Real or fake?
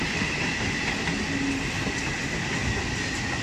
real